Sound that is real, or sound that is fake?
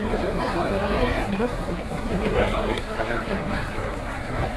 fake